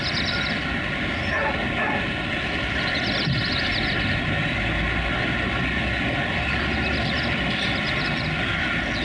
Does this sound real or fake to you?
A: real